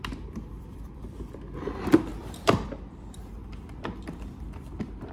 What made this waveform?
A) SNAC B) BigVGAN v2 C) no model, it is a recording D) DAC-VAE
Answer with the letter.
B